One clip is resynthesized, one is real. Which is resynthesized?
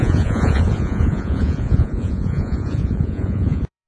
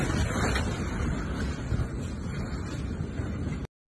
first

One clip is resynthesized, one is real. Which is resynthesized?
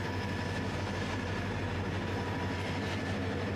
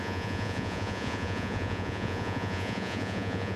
second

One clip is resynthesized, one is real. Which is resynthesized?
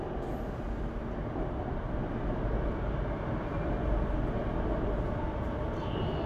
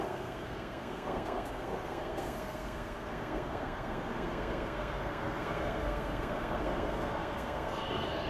second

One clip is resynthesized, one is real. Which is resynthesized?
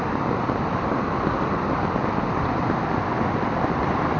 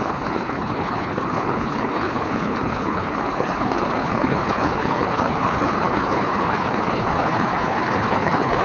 second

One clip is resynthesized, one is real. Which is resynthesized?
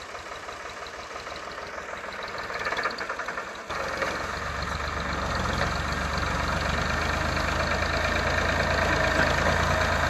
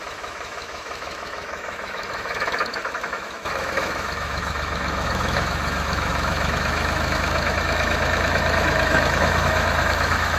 second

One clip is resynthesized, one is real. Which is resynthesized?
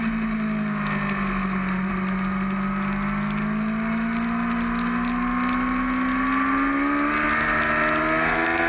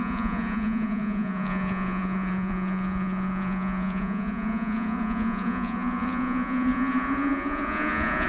second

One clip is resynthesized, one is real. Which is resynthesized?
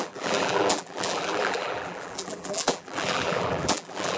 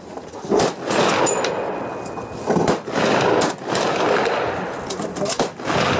first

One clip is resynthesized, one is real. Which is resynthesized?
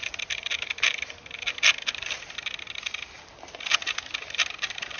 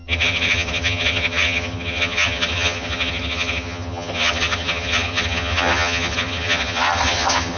second